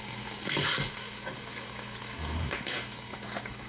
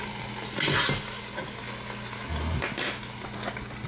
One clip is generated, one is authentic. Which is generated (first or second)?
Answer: first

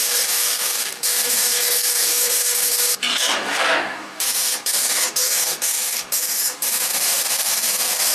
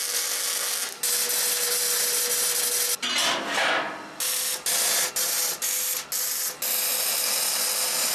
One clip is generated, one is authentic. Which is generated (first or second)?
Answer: first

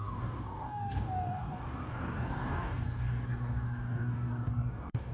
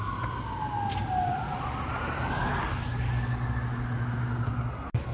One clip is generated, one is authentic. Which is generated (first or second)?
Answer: first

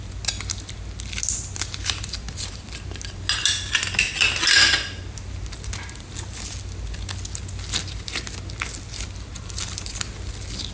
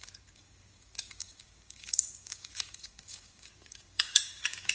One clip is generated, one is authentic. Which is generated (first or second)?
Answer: second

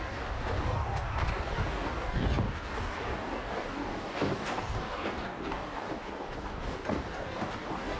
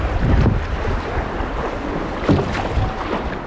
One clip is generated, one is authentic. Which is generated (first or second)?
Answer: first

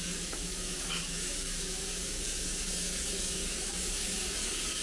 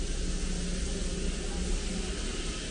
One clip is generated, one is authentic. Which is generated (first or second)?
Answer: first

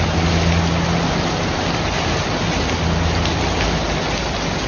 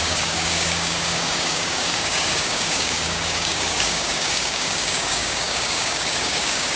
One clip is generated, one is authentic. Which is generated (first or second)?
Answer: second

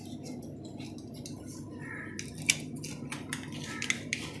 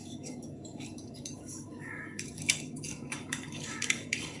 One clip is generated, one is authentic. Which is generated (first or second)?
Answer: second